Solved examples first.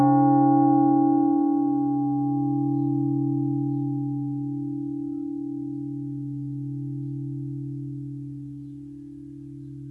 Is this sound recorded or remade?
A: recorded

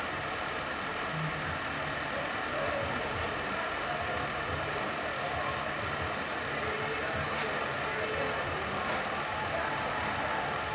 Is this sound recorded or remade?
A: recorded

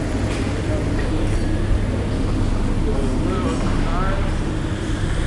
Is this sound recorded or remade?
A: recorded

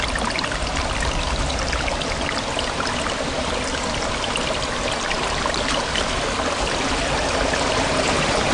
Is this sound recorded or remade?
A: recorded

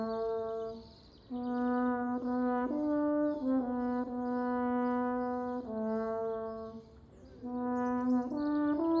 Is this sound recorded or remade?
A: recorded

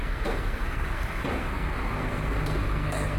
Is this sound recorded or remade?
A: remade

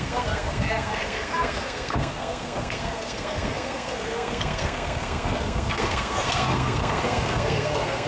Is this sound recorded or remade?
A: remade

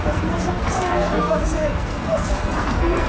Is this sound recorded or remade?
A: remade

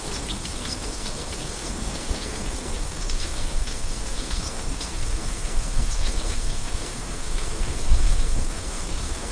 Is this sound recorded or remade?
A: remade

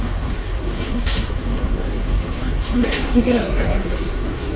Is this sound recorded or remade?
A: remade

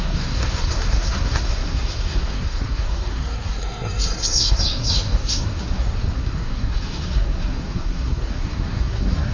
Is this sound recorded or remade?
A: remade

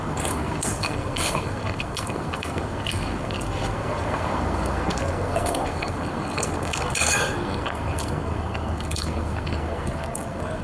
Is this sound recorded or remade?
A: remade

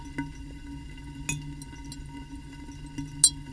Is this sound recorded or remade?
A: recorded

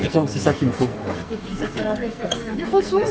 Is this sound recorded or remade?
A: remade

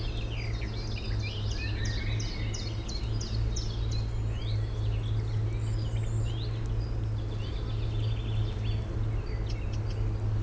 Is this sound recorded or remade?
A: recorded